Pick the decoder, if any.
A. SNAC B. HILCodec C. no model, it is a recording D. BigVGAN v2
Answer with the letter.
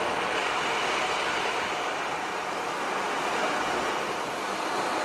D